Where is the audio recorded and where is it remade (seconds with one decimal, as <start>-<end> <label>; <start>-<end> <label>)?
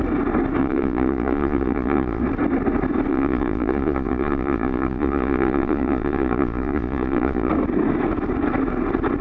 0.0-0.6 recorded; 0.6-2.2 remade; 2.2-3.1 recorded; 3.1-7.5 remade; 7.5-9.2 recorded